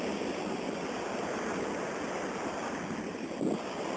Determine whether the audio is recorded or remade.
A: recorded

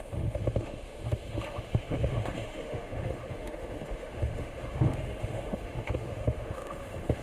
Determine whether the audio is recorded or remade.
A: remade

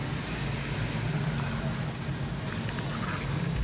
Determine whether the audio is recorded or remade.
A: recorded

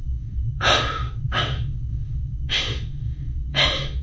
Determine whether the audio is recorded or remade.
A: remade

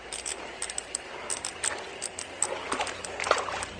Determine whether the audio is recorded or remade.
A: recorded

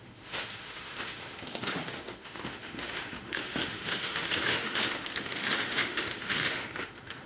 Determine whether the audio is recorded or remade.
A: remade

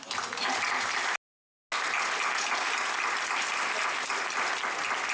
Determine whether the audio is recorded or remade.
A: recorded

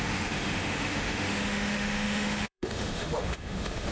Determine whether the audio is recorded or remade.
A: remade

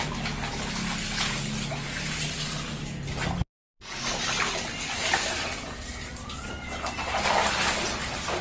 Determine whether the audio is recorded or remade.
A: recorded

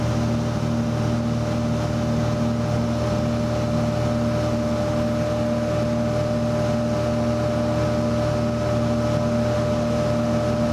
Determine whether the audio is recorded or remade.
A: recorded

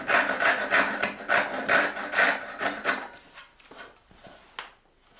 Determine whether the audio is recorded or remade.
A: recorded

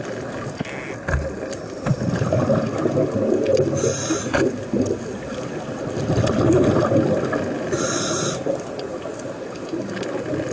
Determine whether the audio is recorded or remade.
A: recorded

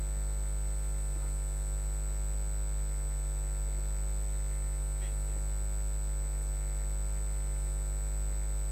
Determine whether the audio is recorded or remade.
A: recorded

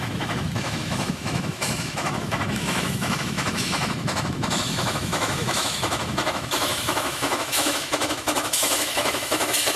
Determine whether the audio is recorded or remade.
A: remade